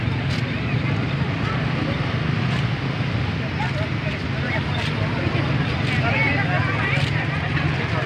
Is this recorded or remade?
recorded